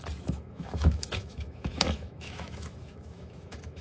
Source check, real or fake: fake